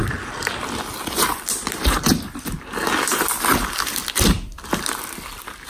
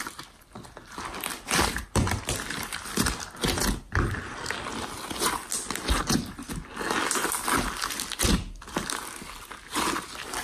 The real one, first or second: second